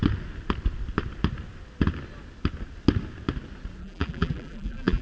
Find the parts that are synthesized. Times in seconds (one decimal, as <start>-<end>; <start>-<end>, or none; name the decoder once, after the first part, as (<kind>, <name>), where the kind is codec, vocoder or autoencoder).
3.8-5.0 (vocoder, BigVGAN v2)